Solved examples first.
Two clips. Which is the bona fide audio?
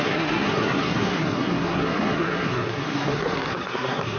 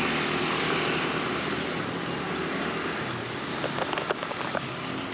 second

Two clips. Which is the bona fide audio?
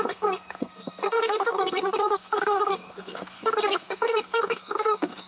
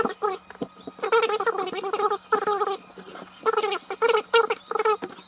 second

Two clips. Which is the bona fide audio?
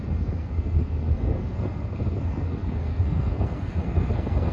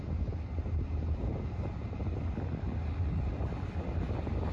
second